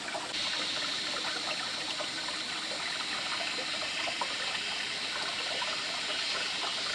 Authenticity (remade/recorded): recorded